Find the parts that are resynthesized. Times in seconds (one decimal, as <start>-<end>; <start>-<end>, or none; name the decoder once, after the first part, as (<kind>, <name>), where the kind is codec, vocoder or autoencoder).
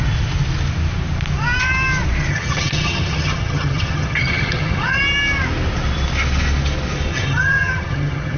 2.3-5.0 (vocoder, HiFi-GAN); 7.1-8.4